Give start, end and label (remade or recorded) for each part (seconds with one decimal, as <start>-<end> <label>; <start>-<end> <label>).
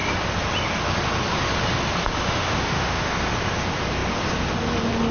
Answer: 0.0-2.0 recorded; 2.0-3.1 remade; 3.1-5.1 recorded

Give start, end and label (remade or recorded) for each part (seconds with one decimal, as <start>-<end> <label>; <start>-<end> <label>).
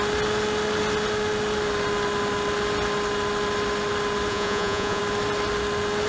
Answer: 0.0-4.3 recorded; 4.3-5.0 remade; 5.0-6.1 recorded